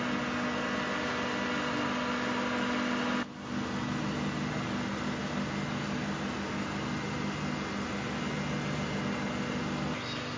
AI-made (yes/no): no